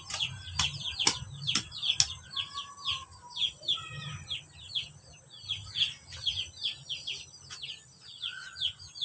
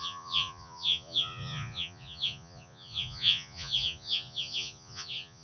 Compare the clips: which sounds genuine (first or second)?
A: first